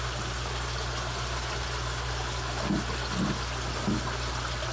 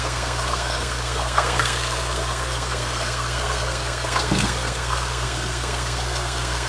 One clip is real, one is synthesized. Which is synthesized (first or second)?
second